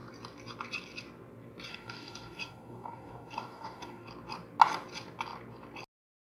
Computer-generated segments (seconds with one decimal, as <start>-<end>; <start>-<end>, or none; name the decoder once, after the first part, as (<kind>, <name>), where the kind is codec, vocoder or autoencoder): 1.7-4.1 (codec, DAC)